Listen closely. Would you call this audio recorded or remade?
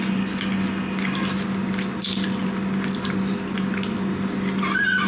recorded